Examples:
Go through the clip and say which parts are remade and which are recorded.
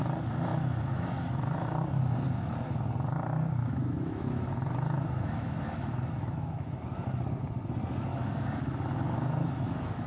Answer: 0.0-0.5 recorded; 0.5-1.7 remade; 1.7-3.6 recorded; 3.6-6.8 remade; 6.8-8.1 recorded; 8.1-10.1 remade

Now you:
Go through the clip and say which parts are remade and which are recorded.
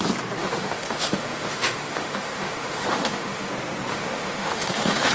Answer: 0.0-0.4 recorded; 0.4-3.5 remade; 3.5-3.9 recorded; 3.9-5.1 remade